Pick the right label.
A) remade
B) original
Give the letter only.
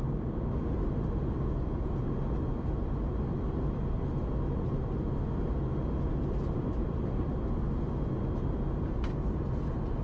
B